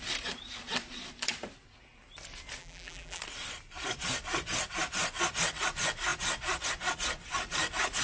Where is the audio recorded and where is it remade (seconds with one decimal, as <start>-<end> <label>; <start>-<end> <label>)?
0.0-2.6 recorded; 2.6-3.2 remade; 3.2-8.0 recorded